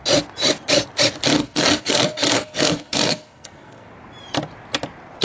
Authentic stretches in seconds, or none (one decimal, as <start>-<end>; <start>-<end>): 0.0-1.4; 3.9-5.2